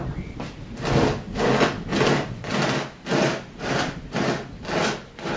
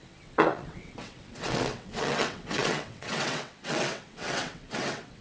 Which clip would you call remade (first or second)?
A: second